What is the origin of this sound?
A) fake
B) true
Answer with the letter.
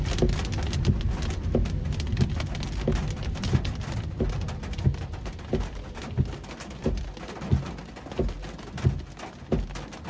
B